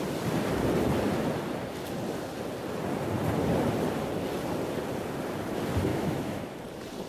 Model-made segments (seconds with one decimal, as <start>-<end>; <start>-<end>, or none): 5.9-6.6

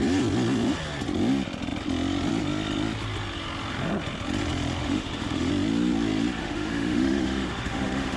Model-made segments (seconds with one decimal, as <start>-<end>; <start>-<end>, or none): 4.8-5.5; 6.4-8.2

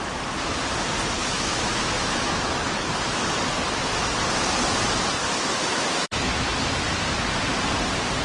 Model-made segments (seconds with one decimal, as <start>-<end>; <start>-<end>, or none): 1.2-3.3; 5.2-6.3

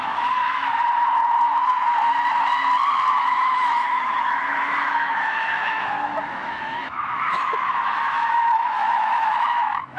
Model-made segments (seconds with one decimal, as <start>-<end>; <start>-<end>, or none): 0.0-0.7; 3.1-10.0

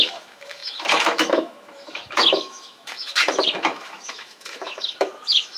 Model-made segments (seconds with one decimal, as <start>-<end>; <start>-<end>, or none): 0.0-5.6

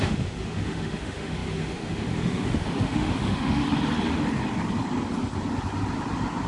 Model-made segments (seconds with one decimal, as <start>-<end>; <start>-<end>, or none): 0.0-3.6

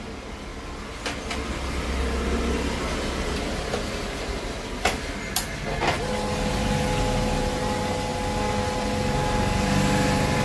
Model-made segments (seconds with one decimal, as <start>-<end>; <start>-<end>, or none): none